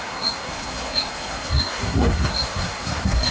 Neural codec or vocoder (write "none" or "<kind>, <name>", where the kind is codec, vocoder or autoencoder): codec, SNAC